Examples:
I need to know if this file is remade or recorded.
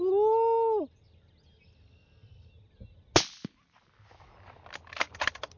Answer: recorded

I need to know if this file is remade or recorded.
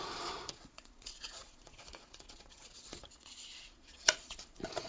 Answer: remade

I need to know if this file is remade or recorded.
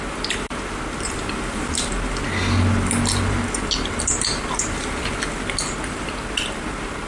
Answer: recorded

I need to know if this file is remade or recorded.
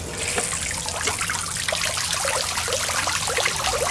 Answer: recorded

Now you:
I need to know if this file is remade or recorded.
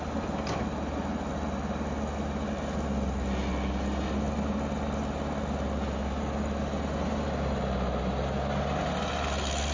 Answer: recorded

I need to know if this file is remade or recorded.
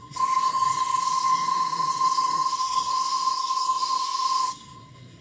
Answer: remade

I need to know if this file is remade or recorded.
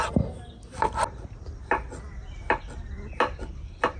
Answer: recorded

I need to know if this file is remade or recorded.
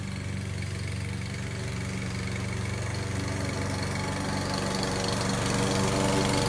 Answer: recorded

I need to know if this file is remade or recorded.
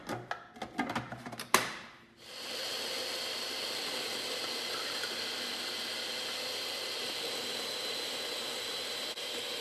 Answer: recorded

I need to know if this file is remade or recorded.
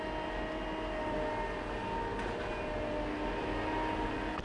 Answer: recorded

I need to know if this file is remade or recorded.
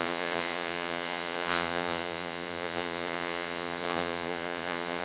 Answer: remade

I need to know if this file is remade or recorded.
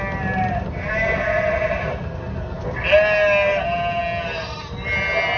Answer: recorded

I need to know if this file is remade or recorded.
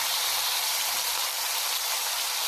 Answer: remade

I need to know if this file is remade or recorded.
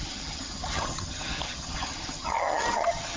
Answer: remade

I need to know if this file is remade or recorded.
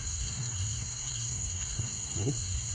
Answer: remade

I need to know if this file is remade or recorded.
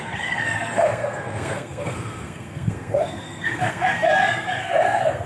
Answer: remade